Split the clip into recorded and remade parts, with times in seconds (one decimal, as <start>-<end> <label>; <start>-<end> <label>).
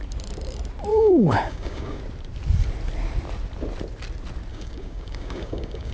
0.0-0.9 recorded; 0.9-2.0 remade; 2.0-4.5 recorded; 4.5-5.9 remade